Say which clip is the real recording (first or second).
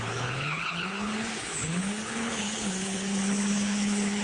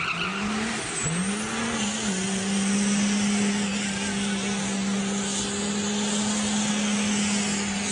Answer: second